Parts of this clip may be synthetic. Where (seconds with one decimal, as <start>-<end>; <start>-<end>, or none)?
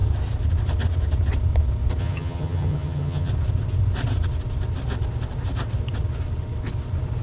2.0-3.3